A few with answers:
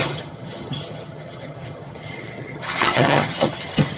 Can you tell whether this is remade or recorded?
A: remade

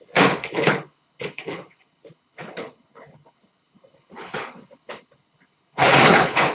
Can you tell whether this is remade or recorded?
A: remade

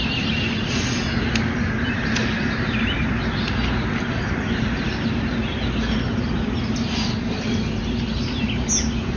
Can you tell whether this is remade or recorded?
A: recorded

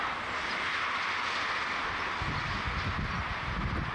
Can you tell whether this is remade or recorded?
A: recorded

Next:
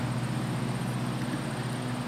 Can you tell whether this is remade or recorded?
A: recorded